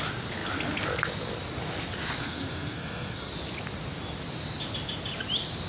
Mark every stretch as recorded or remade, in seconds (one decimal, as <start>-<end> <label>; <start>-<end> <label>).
0.0-2.2 recorded; 2.2-3.3 remade; 3.3-5.7 recorded